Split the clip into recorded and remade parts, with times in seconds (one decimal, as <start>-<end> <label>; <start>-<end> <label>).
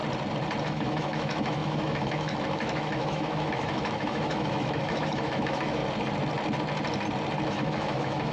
0.0-0.6 recorded; 0.6-5.8 remade; 5.8-7.5 recorded; 7.5-8.3 remade